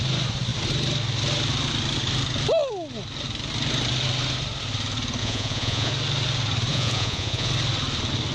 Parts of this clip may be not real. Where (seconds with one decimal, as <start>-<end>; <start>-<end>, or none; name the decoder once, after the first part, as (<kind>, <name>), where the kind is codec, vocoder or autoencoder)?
5.2-5.9 (vocoder, Vocos); 6.7-7.5